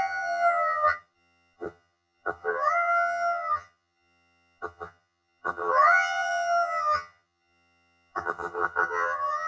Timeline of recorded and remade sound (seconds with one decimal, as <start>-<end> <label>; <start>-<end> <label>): 0.0-9.5 remade